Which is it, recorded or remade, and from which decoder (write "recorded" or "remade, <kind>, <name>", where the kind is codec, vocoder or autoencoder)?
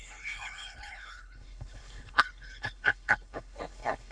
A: remade, codec, HILCodec